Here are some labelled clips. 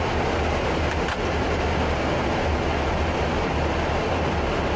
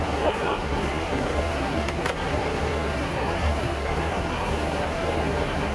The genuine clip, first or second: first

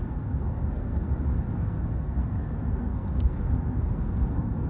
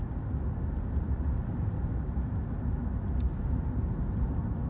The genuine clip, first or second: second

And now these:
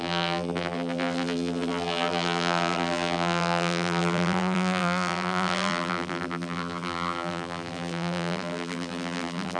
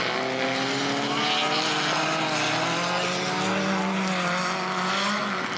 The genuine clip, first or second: second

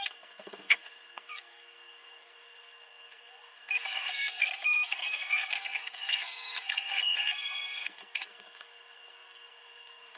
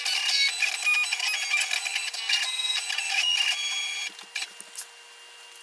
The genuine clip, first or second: second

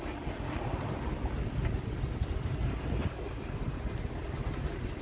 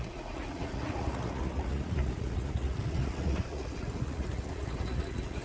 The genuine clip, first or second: first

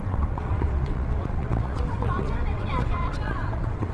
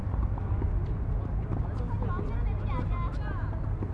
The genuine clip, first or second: second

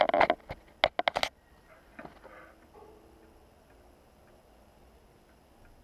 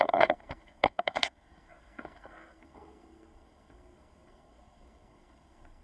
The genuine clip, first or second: first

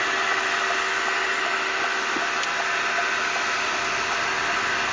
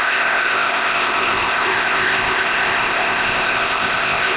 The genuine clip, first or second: first